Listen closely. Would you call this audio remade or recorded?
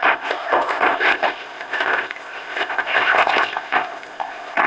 remade